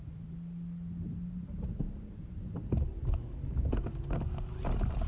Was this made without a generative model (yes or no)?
yes